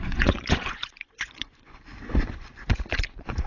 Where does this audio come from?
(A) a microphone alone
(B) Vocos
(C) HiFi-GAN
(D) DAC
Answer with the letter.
B